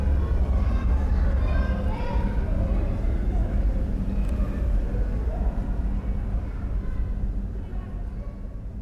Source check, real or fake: real